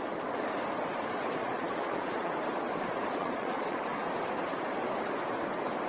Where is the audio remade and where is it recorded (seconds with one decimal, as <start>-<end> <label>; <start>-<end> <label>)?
0.0-1.4 recorded; 1.4-2.3 remade; 2.3-3.2 recorded; 3.2-3.8 remade; 3.8-5.9 recorded